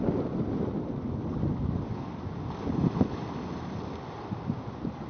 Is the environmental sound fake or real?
real